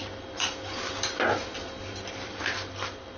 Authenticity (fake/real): real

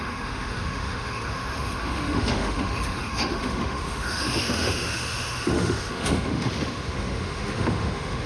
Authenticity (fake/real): fake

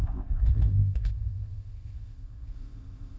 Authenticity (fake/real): fake